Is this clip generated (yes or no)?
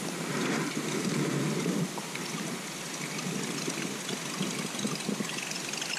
no